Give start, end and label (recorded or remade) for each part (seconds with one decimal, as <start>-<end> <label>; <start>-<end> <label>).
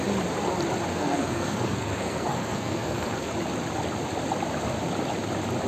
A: 0.0-0.9 recorded; 0.9-3.3 remade; 3.3-5.7 recorded